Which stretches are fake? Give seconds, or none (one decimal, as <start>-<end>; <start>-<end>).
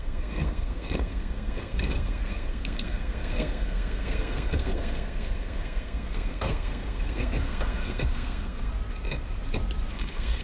0.0-8.7; 9.9-10.4